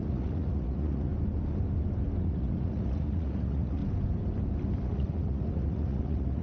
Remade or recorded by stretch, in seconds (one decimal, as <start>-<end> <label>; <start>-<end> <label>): 0.0-1.1 remade; 1.1-2.2 recorded; 2.2-3.8 remade; 3.8-4.8 recorded; 4.8-6.4 remade